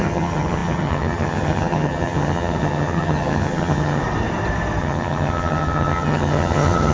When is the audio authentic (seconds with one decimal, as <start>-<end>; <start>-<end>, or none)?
4.0-4.8